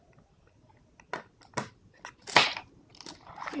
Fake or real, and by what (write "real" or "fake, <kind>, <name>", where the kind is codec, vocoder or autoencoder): real